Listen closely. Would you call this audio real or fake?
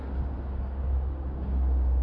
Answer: real